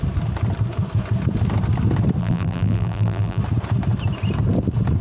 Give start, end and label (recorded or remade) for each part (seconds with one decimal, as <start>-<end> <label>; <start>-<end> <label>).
0.0-2.2 recorded; 2.2-3.4 remade; 3.4-5.0 recorded